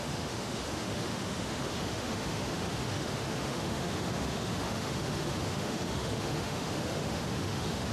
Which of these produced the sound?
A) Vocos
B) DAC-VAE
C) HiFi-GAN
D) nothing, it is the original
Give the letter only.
B